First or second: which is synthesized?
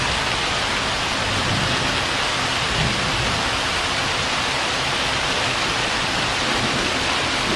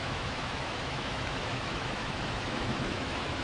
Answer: second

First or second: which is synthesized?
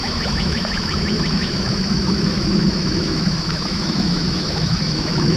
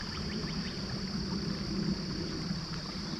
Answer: first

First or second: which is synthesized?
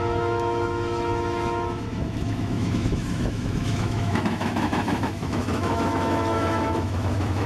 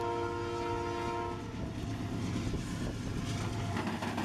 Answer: first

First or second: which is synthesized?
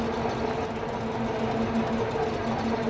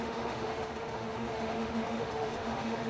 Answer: second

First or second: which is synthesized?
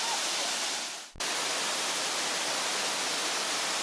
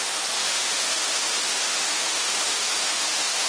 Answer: second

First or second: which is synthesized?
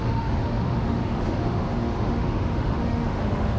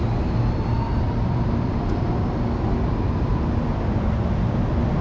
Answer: first